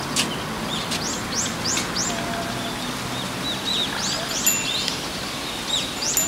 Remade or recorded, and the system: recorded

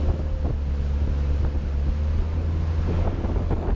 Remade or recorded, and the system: recorded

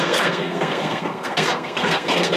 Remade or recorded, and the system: remade, codec, SNAC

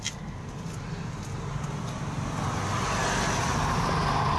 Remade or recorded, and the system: recorded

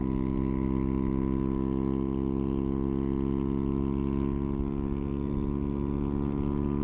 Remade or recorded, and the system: recorded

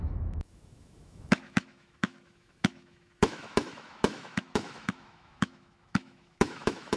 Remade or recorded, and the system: remade, autoencoder, DAC-VAE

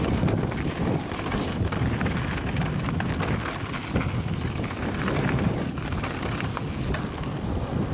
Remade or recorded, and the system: recorded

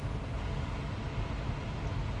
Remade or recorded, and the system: recorded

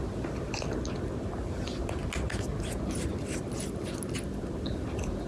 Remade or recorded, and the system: recorded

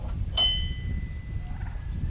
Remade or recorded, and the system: recorded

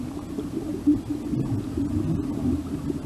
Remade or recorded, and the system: recorded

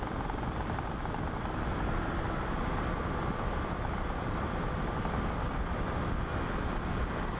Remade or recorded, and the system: recorded